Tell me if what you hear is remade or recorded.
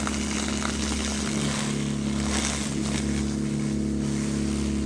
recorded